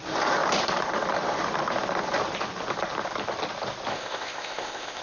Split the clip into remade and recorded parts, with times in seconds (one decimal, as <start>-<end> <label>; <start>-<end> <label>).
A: 0.0-3.9 recorded; 3.9-5.0 remade